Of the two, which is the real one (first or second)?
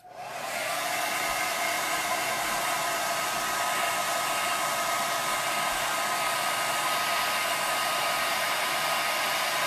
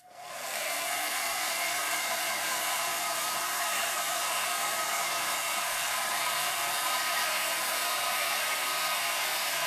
first